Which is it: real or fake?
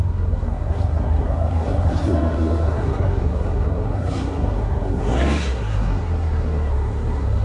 fake